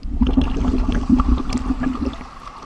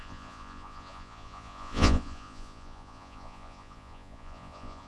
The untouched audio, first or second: first